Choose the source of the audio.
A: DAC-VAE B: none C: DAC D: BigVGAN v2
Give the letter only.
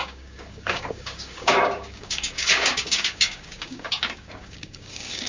C